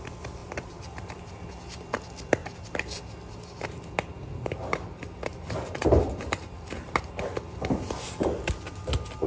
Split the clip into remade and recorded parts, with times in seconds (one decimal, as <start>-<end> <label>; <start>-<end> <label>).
0.0-0.4 recorded; 0.4-1.5 remade; 1.5-2.4 recorded; 2.4-3.0 remade; 3.0-5.3 recorded; 5.3-7.1 remade; 7.1-9.3 recorded